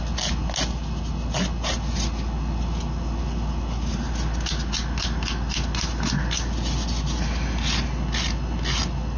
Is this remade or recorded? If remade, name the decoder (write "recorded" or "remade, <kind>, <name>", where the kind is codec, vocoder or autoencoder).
recorded